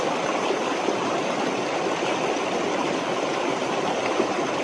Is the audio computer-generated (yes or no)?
no